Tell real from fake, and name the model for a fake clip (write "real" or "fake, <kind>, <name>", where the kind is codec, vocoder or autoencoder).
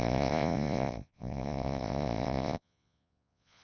fake, vocoder, Vocos